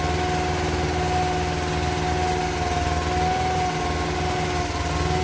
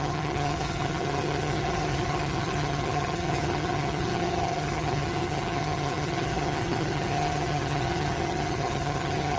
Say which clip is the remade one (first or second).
second